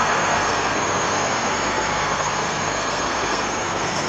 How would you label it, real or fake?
fake